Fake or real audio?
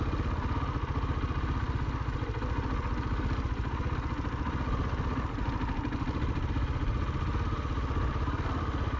real